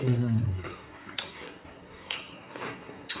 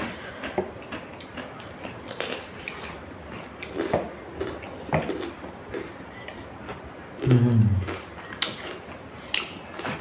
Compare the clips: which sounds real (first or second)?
second